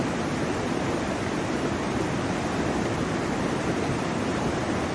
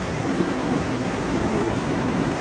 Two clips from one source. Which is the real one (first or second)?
first